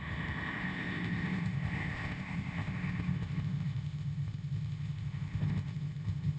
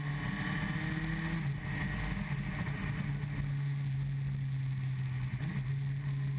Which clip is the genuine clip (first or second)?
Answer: second